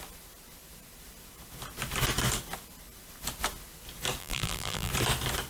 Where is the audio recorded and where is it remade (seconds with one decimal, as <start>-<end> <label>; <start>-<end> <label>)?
0.0-4.2 recorded; 4.2-4.9 remade; 4.9-5.5 recorded

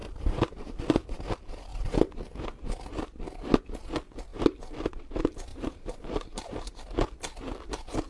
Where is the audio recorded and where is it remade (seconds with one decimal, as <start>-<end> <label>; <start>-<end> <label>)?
0.0-0.8 remade; 0.8-4.3 recorded; 4.3-4.9 remade; 4.9-5.5 recorded; 5.5-6.8 remade; 6.8-8.1 recorded

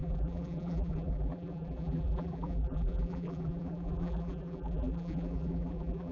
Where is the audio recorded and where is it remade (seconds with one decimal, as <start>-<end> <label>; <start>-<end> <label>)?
0.0-6.1 remade